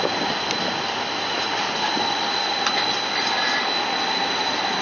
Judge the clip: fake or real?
real